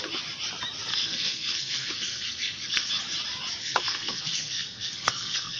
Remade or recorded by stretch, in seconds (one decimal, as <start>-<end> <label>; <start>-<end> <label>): 0.0-0.9 recorded; 0.9-2.9 remade; 2.9-3.6 recorded; 3.6-5.6 remade